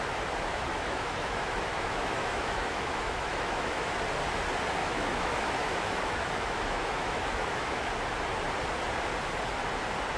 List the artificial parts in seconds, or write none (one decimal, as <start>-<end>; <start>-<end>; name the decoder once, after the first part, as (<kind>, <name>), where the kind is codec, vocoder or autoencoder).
0.7-4.0 (autoencoder, DAC-VAE); 4.8-7.9